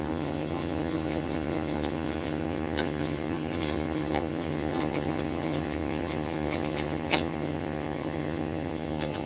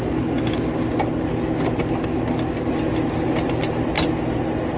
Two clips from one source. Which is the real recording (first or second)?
second